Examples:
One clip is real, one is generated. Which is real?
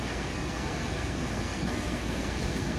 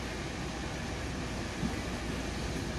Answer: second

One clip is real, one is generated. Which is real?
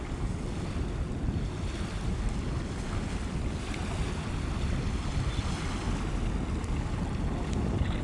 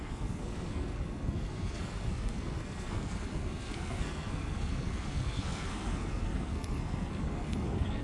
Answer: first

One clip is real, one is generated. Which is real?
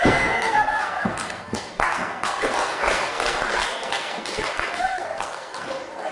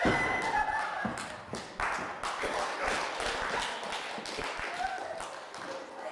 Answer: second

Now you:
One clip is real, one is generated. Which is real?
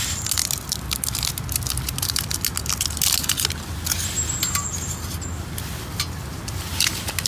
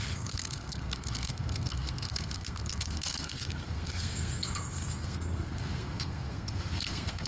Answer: first